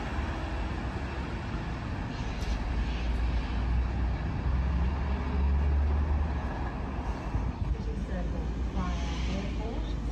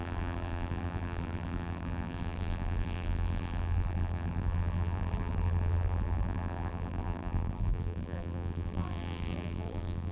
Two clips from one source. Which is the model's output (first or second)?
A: second